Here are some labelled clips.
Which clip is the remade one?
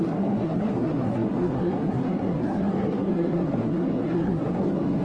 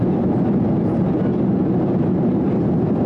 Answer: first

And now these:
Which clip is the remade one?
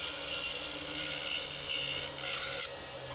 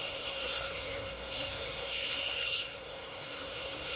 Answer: second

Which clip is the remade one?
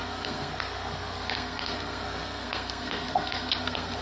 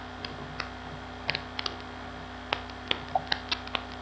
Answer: first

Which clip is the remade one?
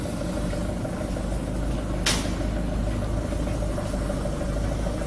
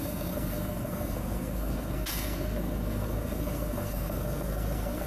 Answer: second